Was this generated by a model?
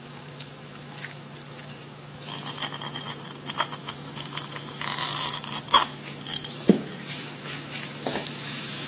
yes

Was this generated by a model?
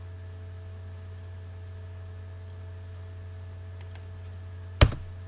no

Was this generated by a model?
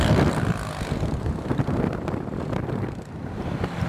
no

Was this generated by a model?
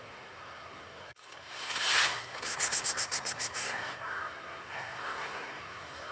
yes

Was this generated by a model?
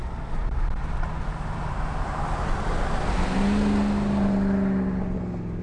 no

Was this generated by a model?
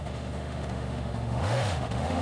yes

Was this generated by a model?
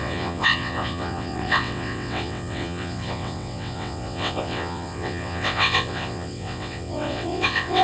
yes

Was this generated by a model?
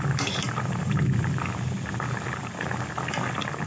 no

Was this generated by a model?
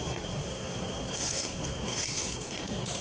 yes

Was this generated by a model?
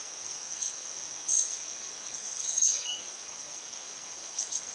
yes